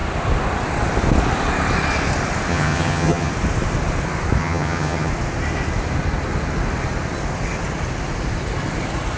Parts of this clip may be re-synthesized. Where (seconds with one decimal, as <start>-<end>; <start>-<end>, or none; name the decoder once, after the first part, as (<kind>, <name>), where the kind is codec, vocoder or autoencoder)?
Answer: 2.5-3.3 (vocoder, HiFi-GAN); 4.4-5.1

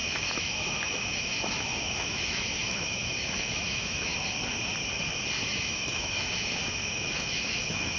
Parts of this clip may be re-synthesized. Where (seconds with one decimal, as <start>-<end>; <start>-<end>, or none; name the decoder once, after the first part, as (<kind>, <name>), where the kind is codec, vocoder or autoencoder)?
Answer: 0.0-4.1 (autoencoder, DAC-VAE); 5.5-8.0

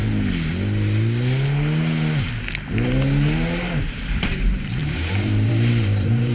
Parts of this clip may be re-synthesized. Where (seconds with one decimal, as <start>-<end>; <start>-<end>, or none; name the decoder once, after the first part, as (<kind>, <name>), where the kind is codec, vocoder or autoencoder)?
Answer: 3.8-6.3 (vocoder, BigVGAN v2)

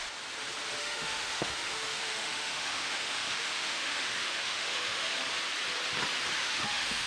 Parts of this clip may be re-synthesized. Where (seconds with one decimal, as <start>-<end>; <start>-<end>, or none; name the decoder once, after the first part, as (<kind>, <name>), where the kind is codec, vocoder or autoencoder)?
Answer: 0.8-5.1 (autoencoder, DAC-VAE); 6.4-7.1

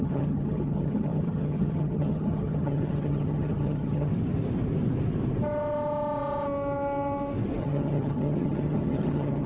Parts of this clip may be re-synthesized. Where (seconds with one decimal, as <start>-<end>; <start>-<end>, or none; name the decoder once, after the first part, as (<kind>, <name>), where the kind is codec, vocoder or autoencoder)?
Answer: 0.0-4.1 (vocoder, HiFi-GAN); 7.6-9.5

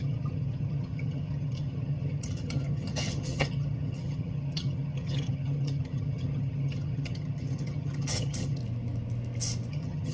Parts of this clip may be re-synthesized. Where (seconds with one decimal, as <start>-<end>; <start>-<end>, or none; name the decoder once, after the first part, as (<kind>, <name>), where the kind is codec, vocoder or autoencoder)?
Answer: 0.0-8.6 (vocoder, HiFi-GAN); 9.7-10.1

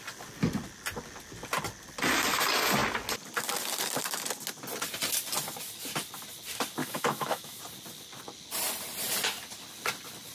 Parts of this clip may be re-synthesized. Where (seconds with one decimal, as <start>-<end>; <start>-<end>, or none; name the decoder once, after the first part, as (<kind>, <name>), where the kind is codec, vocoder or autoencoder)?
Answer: 6.8-7.6 (autoencoder, DAC-VAE)

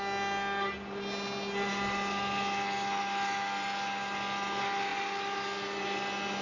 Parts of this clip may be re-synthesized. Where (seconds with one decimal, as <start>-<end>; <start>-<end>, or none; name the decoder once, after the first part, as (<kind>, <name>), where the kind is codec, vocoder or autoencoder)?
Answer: none